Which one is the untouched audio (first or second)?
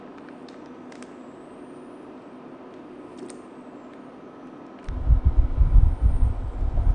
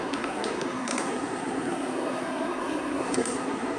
first